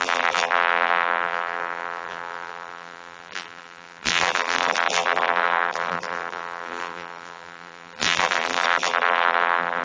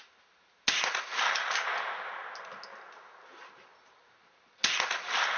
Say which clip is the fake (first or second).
first